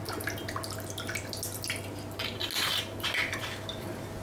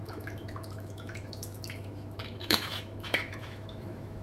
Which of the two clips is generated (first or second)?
second